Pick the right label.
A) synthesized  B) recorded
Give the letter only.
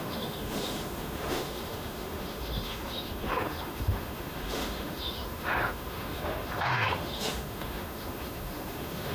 A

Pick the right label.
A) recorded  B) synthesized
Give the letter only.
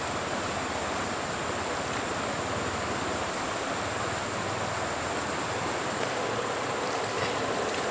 A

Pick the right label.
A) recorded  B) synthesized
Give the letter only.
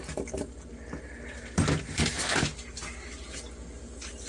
A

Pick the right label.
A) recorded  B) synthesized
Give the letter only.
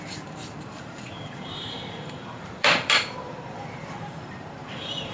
B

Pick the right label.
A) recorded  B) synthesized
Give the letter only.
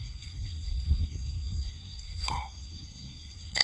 B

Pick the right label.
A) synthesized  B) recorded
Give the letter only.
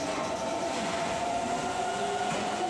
A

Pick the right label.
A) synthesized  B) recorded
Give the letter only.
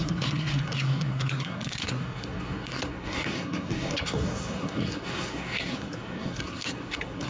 A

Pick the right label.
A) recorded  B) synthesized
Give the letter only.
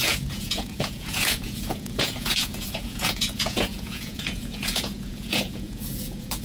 B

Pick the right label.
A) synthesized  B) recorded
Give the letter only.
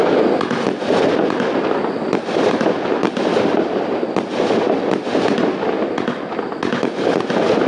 B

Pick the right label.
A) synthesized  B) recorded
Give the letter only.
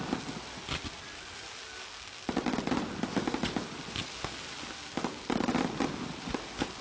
B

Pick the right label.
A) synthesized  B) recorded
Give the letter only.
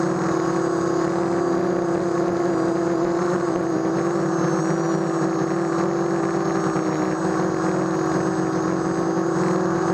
B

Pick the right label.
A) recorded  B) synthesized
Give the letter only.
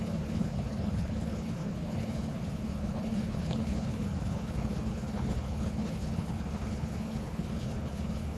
B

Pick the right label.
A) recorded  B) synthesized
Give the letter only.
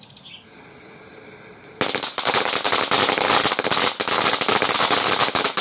A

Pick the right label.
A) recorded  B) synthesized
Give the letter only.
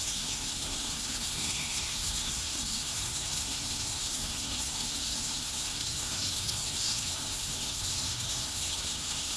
B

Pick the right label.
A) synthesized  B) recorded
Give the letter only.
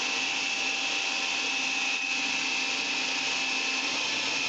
B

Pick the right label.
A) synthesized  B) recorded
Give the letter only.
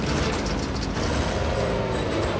B